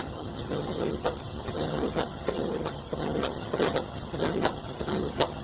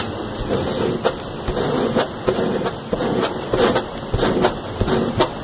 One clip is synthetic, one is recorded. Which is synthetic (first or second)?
first